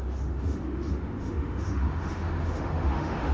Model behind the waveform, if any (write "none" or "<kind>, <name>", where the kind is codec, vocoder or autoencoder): autoencoder, DAC-VAE